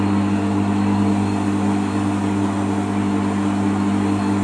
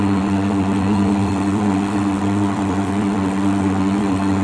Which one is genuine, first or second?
first